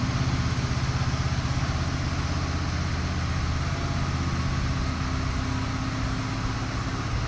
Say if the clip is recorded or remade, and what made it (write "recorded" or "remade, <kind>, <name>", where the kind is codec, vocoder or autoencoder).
recorded